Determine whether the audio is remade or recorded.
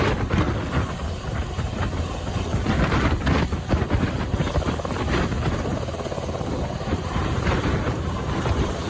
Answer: remade